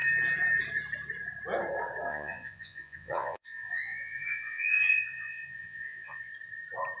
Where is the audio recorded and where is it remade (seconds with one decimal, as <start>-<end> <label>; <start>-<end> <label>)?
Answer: 0.0-2.1 recorded; 2.1-6.3 remade; 6.3-7.0 recorded